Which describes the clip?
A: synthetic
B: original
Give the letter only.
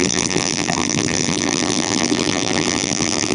A